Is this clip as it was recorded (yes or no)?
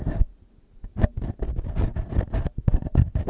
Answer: yes